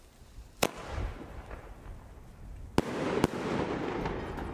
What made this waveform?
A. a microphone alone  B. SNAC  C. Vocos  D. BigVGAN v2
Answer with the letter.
A